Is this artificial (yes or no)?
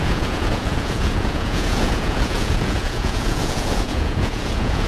yes